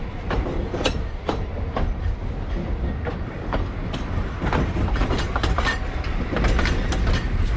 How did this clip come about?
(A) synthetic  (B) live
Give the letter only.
B